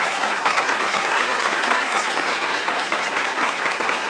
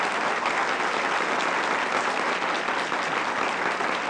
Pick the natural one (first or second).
second